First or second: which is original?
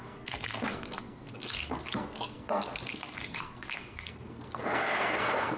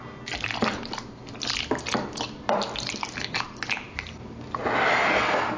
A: second